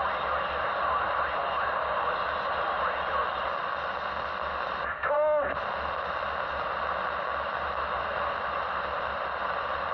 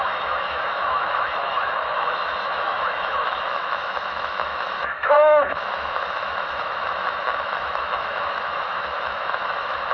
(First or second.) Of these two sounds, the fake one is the second